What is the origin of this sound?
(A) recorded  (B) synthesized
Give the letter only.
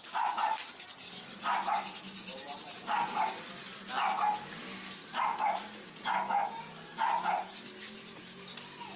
A